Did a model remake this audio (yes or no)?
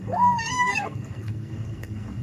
yes